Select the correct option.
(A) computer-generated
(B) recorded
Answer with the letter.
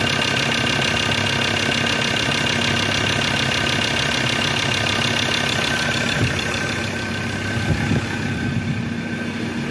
B